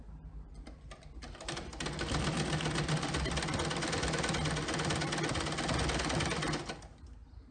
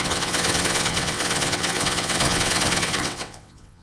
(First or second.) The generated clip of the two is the second